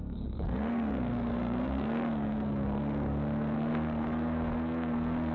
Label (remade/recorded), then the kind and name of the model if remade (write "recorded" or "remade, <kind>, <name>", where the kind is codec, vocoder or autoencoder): remade, codec, SNAC